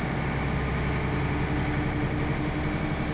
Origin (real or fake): real